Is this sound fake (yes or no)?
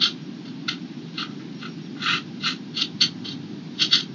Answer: no